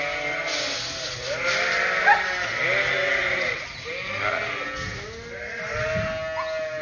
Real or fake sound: real